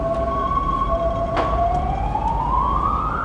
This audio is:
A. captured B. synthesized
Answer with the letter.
A